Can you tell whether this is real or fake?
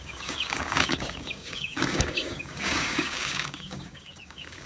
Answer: fake